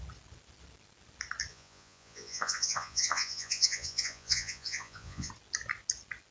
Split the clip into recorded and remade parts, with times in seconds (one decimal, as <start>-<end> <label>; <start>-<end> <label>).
0.0-1.5 recorded; 1.5-5.3 remade; 5.3-6.3 recorded